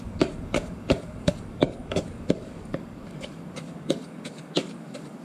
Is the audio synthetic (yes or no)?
yes